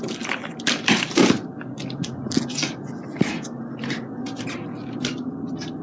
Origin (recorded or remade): remade